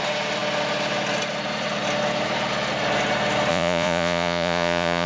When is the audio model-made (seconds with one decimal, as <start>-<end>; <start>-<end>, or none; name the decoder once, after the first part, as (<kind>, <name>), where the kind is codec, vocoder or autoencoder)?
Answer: 3.5-5.1 (vocoder, Vocos)